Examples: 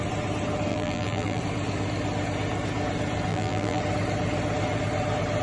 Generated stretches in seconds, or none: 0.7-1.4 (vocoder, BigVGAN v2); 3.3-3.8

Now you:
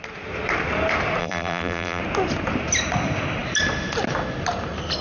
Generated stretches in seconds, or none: 1.2-2.0 (vocoder, BigVGAN v2)